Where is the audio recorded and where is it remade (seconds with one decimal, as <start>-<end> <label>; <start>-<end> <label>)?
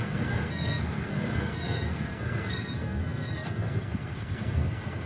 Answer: 0.0-5.1 remade